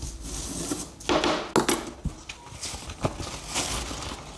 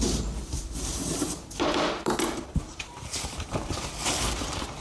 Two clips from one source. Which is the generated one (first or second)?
second